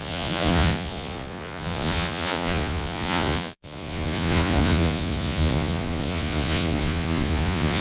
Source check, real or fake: fake